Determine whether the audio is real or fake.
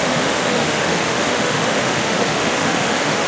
fake